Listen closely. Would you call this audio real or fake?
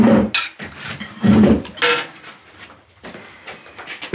real